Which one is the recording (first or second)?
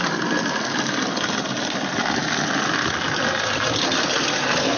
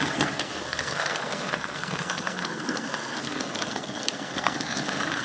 first